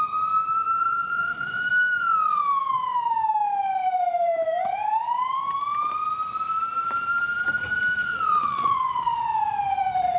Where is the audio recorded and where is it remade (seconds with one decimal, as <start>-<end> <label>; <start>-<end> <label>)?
0.0-0.8 recorded; 0.8-1.6 remade; 1.6-8.0 recorded; 8.0-9.5 remade; 9.5-10.2 recorded